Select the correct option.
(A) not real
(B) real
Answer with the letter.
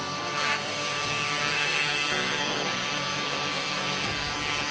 A